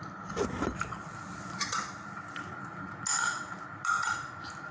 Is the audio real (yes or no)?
yes